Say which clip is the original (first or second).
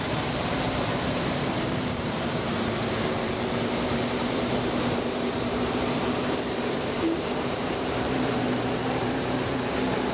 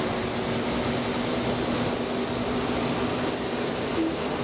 second